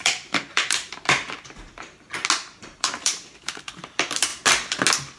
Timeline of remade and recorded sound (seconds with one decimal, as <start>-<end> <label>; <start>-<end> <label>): 0.0-2.1 remade; 2.1-2.6 recorded; 2.6-4.3 remade; 4.3-5.2 recorded

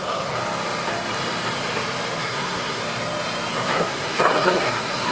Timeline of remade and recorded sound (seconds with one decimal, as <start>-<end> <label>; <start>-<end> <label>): 0.0-0.4 remade; 0.4-2.2 recorded; 2.2-2.8 remade; 2.8-3.5 recorded; 3.5-5.1 remade

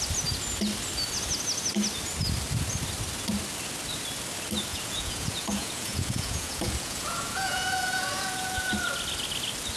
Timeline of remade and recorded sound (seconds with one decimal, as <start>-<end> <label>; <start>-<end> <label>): 0.0-4.7 recorded; 4.7-8.7 remade; 8.7-9.8 recorded

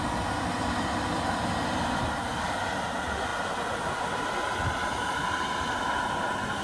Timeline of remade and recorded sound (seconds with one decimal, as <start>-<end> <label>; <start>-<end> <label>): 0.0-6.6 recorded

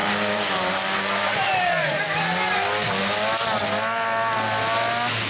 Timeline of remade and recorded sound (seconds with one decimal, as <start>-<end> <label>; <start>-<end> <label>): 0.0-2.0 remade; 2.0-5.3 recorded